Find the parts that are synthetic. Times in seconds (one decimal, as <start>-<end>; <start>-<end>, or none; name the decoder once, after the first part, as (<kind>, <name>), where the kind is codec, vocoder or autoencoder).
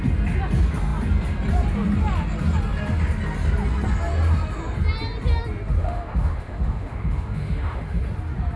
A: 5.8-8.0 (autoencoder, DAC-VAE)